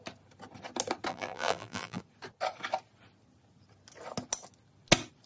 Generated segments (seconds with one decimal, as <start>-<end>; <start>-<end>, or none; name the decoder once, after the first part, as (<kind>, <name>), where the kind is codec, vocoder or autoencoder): 1.1-2.0 (vocoder, BigVGAN v2)